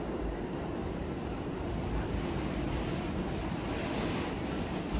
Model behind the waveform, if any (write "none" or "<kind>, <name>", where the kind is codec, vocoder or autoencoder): none